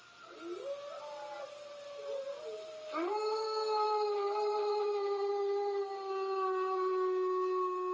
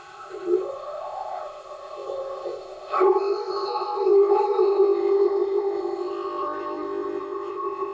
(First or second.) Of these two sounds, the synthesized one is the second